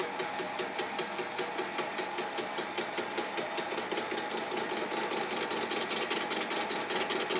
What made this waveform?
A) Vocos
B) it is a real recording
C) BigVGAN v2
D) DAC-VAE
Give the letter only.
B